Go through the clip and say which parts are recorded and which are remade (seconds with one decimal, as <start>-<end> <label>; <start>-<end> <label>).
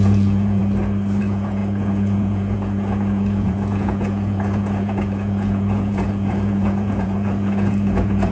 0.0-0.6 remade; 0.6-1.2 recorded; 1.2-8.3 remade